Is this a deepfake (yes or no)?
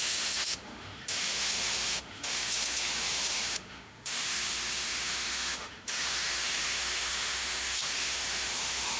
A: yes